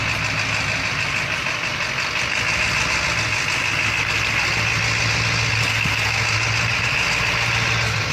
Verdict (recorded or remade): recorded